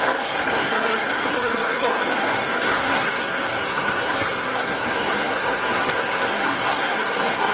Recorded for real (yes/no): no